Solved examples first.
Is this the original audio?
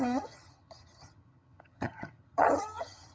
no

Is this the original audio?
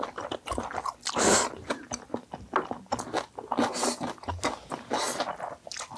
yes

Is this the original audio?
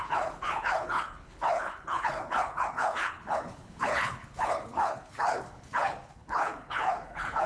no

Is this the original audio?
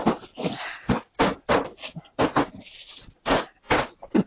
yes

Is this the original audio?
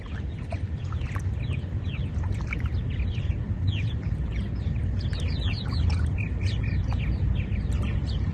yes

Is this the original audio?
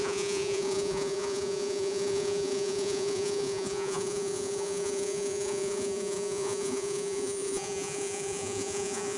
no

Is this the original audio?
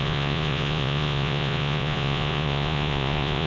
no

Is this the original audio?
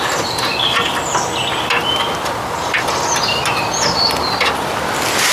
yes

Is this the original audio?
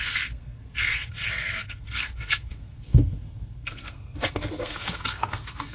no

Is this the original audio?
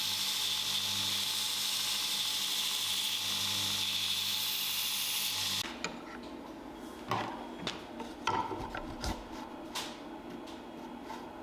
yes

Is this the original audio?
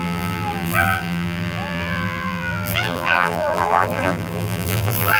no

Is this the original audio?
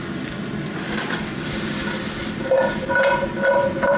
yes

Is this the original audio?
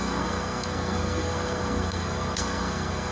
no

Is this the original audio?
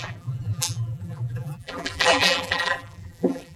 no